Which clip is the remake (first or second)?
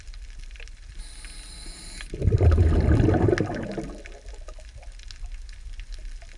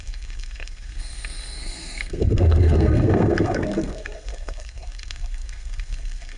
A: second